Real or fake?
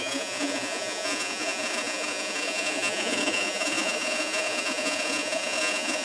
fake